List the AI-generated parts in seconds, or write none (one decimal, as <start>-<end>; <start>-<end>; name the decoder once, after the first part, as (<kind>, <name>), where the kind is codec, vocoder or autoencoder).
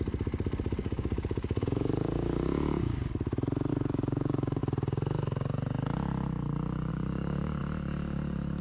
0.8-3.1 (codec, DAC); 3.7-4.6; 6.9-7.6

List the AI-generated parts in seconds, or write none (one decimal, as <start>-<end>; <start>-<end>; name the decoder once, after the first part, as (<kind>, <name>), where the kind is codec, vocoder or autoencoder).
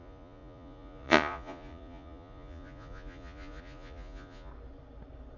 0.0-4.5 (vocoder, Vocos)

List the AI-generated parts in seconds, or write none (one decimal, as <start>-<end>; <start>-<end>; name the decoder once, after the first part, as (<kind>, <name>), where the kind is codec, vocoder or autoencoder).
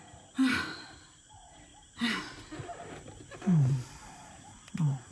none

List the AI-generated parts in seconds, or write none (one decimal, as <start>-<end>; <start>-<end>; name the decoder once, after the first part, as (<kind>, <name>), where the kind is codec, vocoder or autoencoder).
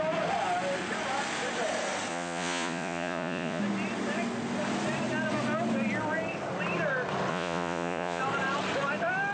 2.1-3.6 (vocoder, Vocos); 7.3-8.2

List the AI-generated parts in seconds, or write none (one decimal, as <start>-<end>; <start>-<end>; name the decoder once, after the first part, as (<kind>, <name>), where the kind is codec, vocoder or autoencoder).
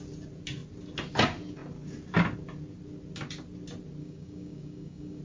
4.0-5.2 (codec, DAC)